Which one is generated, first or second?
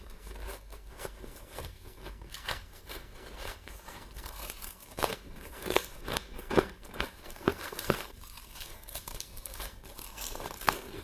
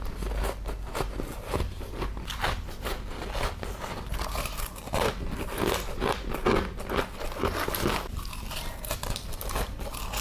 first